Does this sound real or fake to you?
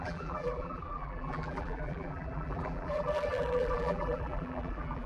fake